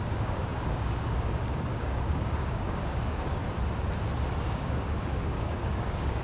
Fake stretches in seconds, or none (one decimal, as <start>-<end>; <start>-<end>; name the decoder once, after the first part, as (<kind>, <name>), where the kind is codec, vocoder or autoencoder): 0.0-3.4 (codec, DAC); 4.4-6.2